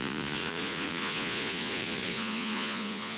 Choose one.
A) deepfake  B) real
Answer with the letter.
A